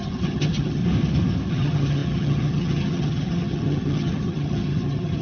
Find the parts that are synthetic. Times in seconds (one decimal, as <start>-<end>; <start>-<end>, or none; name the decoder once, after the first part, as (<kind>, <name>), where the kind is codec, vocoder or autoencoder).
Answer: 0.0-0.8 (vocoder, HiFi-GAN); 1.5-5.2